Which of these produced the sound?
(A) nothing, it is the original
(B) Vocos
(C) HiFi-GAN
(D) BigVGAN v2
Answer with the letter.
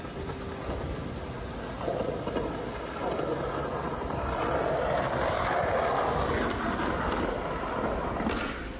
A